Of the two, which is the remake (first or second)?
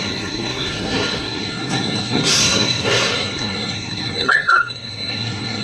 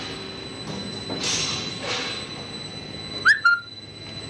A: first